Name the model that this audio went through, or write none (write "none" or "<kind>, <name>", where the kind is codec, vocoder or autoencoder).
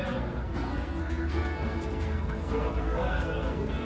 codec, SNAC